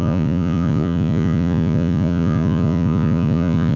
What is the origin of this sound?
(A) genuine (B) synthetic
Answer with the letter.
B